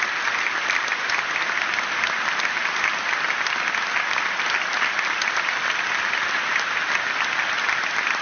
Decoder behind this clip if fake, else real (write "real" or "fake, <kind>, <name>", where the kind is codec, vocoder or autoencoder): real